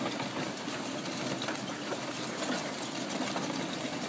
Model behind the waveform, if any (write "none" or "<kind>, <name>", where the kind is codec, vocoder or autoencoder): none